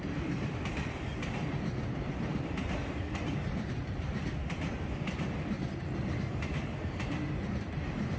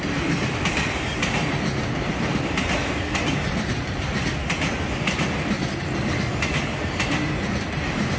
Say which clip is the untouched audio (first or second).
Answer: second